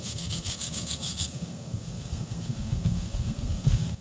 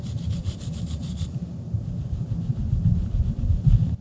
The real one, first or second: second